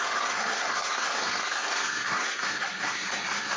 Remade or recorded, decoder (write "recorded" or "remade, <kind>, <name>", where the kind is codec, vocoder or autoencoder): remade, codec, SNAC